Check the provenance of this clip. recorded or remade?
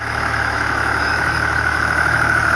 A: remade